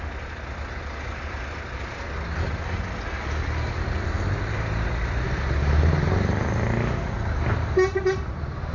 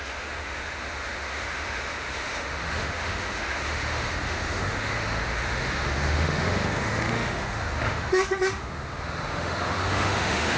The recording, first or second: first